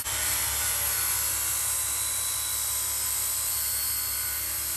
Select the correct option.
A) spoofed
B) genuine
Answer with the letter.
B